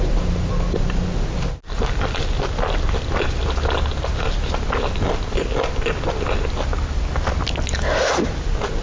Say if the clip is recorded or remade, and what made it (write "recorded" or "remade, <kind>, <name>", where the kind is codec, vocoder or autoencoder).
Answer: recorded